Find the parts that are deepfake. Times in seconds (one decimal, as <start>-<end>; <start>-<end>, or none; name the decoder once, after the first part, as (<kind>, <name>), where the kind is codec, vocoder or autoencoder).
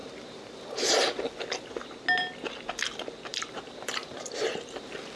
0.0-1.3 (vocoder, BigVGAN v2); 3.3-4.8